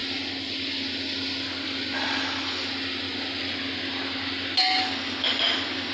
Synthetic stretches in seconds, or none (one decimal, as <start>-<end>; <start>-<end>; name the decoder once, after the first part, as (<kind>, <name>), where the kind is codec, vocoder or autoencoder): none